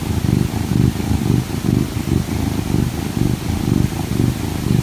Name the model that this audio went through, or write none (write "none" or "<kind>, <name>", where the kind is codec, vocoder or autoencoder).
none